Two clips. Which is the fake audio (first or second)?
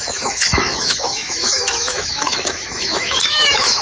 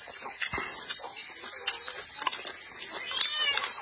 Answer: first